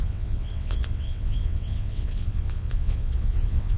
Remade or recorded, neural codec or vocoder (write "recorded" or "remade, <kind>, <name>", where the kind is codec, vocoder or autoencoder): remade, vocoder, WaveNeXt